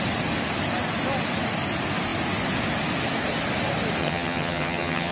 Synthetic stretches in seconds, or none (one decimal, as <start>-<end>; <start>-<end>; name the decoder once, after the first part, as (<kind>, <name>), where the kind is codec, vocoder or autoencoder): 4.0-5.1 (vocoder, HiFi-GAN)